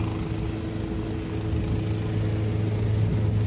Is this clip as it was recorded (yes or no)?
yes